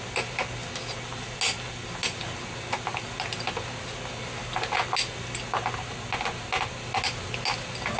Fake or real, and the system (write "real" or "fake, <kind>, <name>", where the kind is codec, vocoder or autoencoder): real